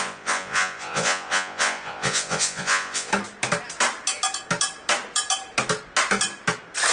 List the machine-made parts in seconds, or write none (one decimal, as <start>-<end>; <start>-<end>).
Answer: 0.0-3.1